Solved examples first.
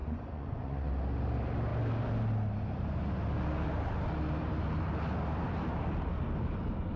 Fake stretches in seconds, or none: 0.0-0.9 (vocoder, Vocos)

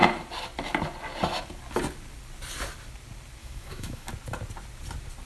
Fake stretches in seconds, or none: 3.4-4.1 (autoencoder, DAC-VAE)

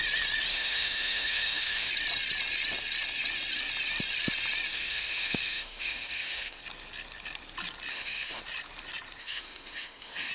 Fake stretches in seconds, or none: 0.5-1.9 (autoencoder, DAC-VAE); 4.7-6.6; 7.9-8.4; 9.2-10.3

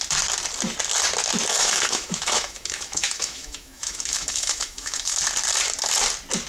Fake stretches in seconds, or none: 1.5-5.2 (autoencoder, DAC-VAE)